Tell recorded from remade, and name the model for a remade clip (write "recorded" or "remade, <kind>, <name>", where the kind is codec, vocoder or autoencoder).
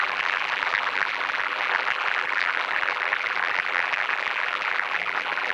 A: remade, vocoder, BigVGAN v2